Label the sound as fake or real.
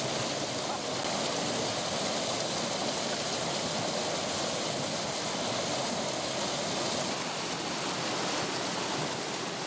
real